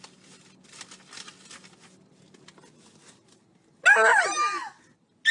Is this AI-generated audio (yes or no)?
no